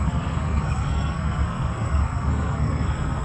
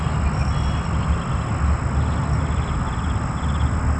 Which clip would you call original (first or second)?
second